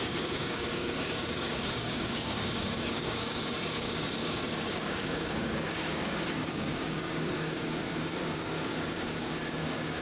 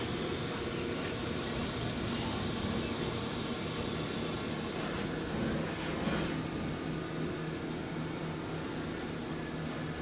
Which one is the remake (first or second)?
first